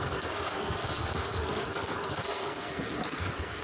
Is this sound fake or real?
fake